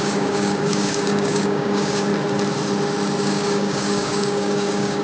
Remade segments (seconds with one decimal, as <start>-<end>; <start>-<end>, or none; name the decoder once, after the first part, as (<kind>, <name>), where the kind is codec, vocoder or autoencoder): 0.0-2.1 (codec, DAC); 3.2-5.0